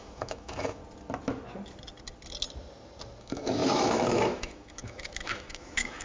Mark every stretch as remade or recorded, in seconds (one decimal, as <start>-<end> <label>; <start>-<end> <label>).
0.0-0.8 remade; 0.8-3.2 recorded; 3.2-6.0 remade